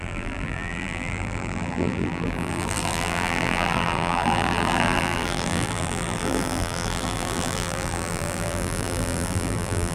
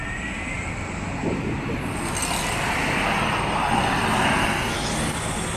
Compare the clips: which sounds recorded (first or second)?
second